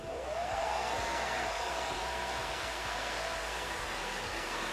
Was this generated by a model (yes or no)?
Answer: yes